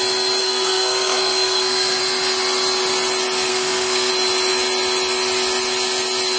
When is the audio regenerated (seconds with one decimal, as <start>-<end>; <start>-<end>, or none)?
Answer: 0.4-2.0; 3.5-4.1